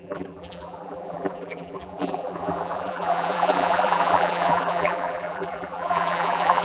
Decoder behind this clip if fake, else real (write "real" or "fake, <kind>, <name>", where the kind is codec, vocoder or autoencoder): fake, vocoder, BigVGAN v2